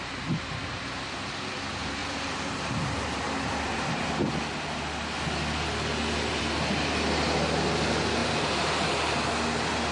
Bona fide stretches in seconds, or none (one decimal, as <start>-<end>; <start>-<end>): 0.0-9.9